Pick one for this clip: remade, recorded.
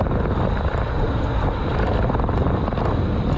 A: recorded